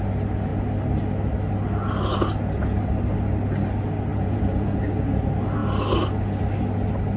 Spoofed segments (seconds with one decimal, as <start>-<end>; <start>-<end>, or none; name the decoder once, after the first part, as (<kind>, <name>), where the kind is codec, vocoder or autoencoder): 4.1-4.8 (vocoder, Vocos)